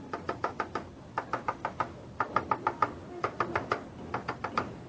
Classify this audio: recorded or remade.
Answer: recorded